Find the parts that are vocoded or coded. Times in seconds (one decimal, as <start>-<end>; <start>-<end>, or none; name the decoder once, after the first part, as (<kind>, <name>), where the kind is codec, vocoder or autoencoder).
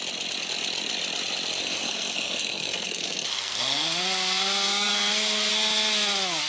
1.6-5.5 (codec, SNAC)